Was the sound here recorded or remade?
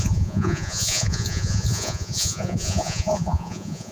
remade